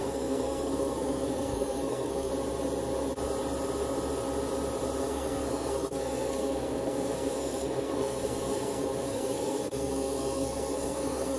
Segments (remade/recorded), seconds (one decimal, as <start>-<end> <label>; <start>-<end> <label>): 0.0-2.3 remade; 2.3-5.0 recorded; 5.0-11.4 remade